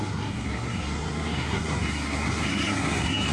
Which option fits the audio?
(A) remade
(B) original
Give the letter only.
A